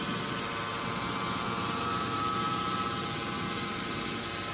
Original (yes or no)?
no